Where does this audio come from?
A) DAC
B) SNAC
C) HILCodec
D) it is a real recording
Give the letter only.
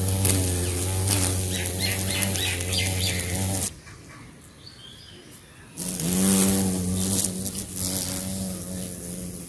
D